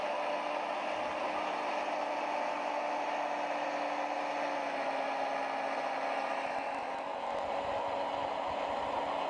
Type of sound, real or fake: real